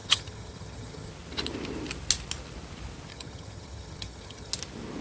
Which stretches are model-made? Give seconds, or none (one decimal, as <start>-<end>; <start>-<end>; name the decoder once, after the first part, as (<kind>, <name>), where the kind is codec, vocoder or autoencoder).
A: 0.0-1.1 (vocoder, HiFi-GAN); 3.1-4.5